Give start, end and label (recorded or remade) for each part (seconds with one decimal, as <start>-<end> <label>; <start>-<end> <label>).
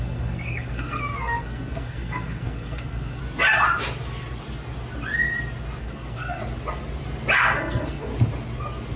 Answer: 0.0-3.2 remade; 3.2-5.8 recorded; 5.8-6.4 remade; 6.4-7.4 recorded; 7.4-8.1 remade; 8.1-9.0 recorded